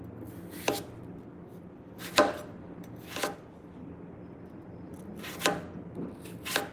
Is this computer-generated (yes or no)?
no